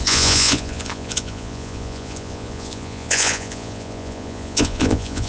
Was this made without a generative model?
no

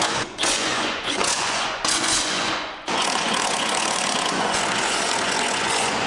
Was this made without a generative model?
no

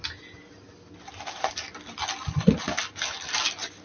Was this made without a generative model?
yes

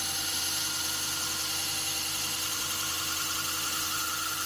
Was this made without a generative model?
yes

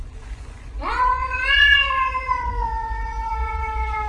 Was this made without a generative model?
no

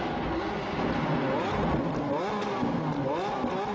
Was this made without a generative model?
yes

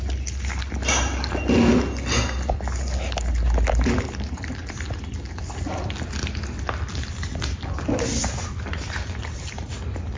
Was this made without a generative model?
yes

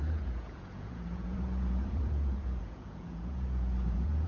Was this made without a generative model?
no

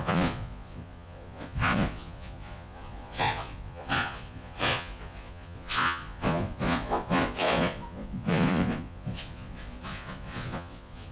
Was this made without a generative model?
no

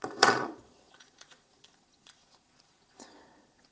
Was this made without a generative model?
no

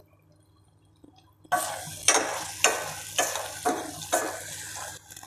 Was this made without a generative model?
yes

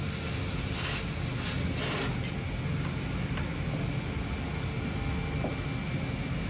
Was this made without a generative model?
yes